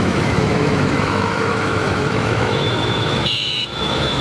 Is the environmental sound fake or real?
fake